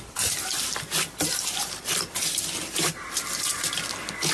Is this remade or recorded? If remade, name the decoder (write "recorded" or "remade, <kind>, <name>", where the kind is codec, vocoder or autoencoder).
remade, vocoder, BigVGAN v2